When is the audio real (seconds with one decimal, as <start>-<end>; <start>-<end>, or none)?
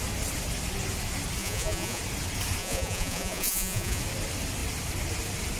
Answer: 0.0-1.4; 2.0-2.6; 4.0-5.6